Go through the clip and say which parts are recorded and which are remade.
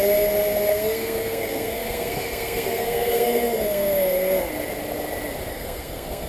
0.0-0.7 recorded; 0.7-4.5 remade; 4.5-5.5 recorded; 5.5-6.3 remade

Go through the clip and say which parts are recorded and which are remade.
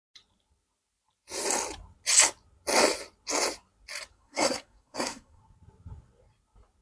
0.0-4.1 recorded; 4.1-5.4 remade; 5.4-6.8 recorded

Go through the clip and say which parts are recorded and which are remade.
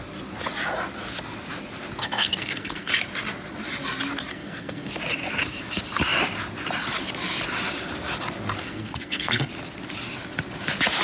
0.0-2.0 recorded; 2.0-2.9 remade; 2.9-4.3 recorded; 4.3-4.9 remade; 4.9-8.6 recorded; 8.6-9.5 remade; 9.5-11.0 recorded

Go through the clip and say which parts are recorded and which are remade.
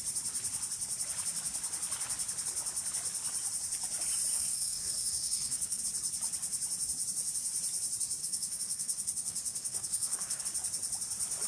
0.0-4.3 recorded; 4.3-5.8 remade; 5.8-8.2 recorded; 8.2-10.4 remade; 10.4-11.5 recorded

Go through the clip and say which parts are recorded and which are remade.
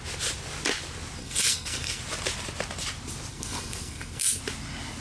0.0-1.2 recorded; 1.2-2.0 remade; 2.0-3.3 recorded; 3.3-4.4 remade; 4.4-5.0 recorded